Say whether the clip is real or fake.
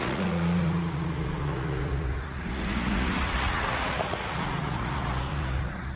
fake